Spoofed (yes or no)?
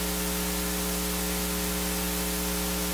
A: no